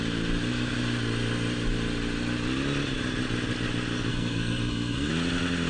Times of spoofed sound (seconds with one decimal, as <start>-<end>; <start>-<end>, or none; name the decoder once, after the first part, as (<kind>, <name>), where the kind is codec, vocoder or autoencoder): 4.1-5.1 (codec, SNAC)